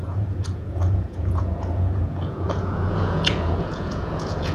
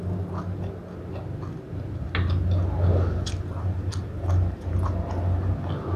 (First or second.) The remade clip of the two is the first